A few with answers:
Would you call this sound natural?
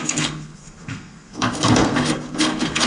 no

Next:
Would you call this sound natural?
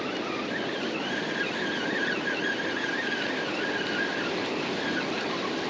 yes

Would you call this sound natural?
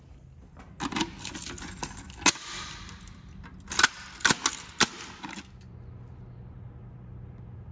yes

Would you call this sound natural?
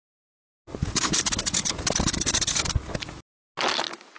yes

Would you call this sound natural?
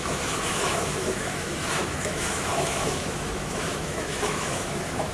no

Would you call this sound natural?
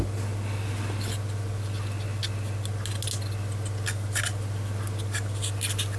yes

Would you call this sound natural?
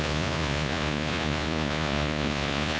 no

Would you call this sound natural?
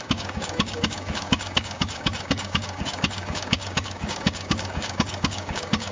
no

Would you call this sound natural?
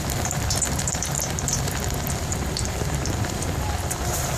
no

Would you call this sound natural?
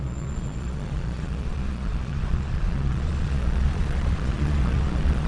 no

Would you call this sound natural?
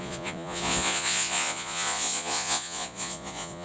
no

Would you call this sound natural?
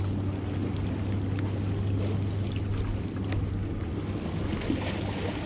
yes